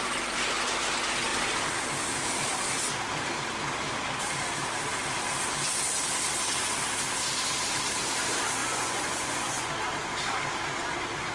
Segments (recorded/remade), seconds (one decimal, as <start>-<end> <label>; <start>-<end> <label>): 0.0-8.6 recorded; 8.6-9.7 remade; 9.7-11.3 recorded